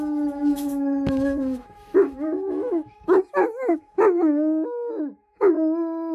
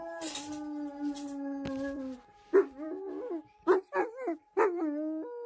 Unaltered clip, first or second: second